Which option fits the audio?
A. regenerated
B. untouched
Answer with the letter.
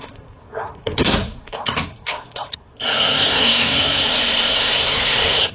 A